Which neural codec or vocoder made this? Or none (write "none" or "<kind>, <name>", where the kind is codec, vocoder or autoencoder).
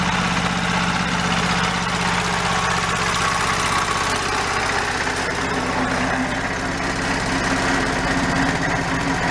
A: none